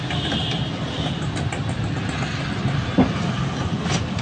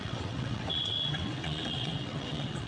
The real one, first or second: first